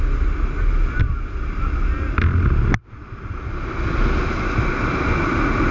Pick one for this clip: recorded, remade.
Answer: recorded